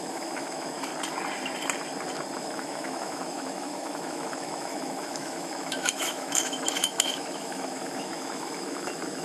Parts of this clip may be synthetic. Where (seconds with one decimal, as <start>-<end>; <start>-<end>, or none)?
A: 0.0-0.9; 2.4-9.2